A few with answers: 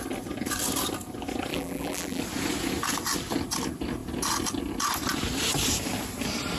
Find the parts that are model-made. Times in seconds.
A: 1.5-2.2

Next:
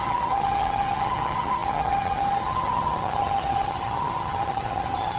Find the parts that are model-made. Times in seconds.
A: 0.0-5.2

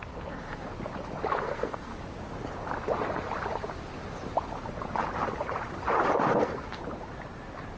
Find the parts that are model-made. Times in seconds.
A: 0.0-0.6; 1.4-1.9; 6.3-6.8